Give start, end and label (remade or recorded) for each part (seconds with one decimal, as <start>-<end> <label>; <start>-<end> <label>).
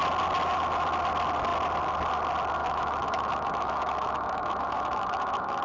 0.0-2.6 recorded; 2.6-5.6 remade